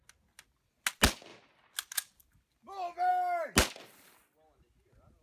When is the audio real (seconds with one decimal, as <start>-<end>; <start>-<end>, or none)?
0.0-5.2